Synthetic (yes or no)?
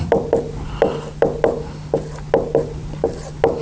no